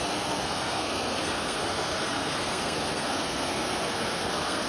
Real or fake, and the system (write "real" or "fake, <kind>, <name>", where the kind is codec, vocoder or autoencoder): fake, codec, SNAC